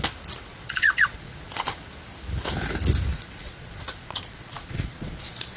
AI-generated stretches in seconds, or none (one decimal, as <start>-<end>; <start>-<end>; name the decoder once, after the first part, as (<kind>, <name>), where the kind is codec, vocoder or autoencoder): 0.5-1.9 (vocoder, Vocos); 3.1-5.6

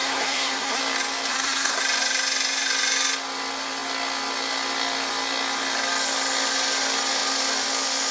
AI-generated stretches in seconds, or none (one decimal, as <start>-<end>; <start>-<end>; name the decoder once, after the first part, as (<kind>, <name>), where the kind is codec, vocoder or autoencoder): 0.0-0.8 (codec, SNAC); 1.3-1.8

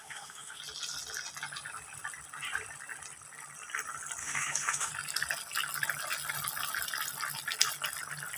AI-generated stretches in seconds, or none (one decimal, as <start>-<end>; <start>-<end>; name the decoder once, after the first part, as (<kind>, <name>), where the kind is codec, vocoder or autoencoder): 0.0-0.6 (autoencoder, DAC-VAE); 4.2-4.9

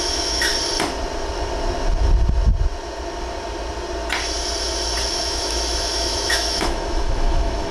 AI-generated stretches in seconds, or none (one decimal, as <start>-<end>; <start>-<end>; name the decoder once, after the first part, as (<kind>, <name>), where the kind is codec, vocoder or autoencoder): 0.0-0.5 (autoencoder, DAC-VAE); 5.1-7.7

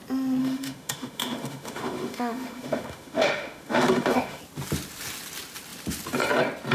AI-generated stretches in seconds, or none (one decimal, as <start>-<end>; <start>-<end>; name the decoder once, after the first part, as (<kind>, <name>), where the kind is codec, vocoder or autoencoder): 0.4-4.4 (autoencoder, DAC-VAE)